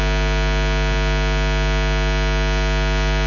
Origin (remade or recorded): recorded